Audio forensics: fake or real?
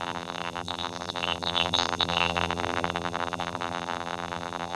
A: fake